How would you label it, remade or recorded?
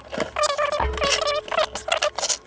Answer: recorded